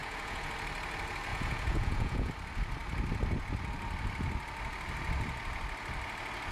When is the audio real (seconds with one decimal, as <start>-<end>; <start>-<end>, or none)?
0.5-1.3; 2.3-6.5